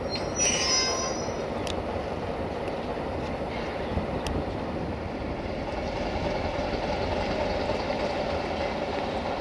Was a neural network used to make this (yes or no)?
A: no